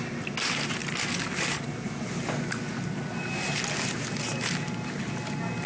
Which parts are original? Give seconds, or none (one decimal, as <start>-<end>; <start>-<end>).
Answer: 0.0-5.7

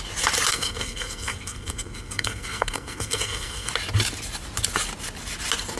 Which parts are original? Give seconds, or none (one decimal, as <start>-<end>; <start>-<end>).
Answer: 0.0-0.5; 3.7-5.8

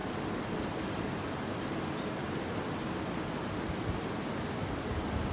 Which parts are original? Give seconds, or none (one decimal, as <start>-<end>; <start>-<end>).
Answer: 0.0-5.3

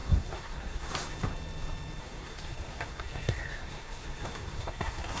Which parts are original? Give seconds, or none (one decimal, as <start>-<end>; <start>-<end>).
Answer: 0.9-2.0

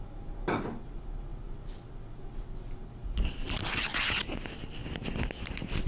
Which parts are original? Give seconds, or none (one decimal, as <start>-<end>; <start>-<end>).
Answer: 0.0-5.9

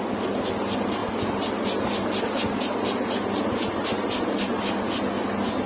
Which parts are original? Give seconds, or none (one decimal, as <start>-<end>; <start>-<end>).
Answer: 0.0-5.7

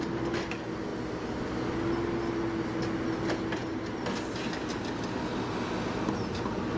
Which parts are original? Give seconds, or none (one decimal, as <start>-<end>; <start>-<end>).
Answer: 0.0-6.8

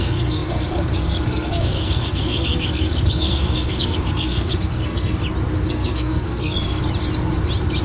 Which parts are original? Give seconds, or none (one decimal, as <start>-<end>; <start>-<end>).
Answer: 5.2-5.7; 6.8-7.8